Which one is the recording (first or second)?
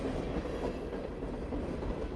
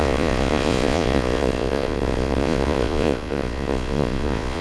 first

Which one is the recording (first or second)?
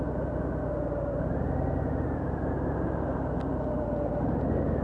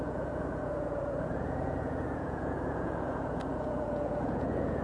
first